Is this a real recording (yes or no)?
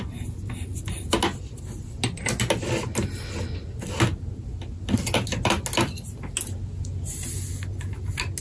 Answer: yes